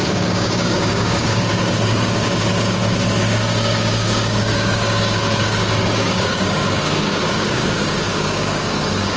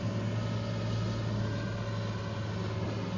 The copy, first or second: first